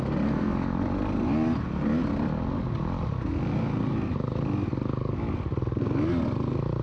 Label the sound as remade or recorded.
recorded